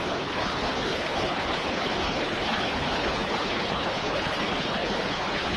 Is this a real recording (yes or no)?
no